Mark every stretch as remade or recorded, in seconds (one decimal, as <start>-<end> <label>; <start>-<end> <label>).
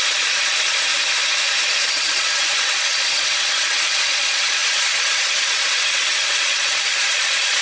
0.0-0.9 remade; 0.9-1.9 recorded; 1.9-7.6 remade